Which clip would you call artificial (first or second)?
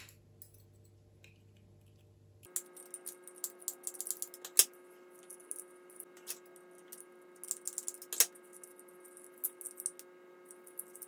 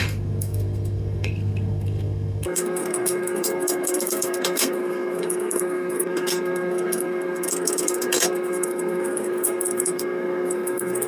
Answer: second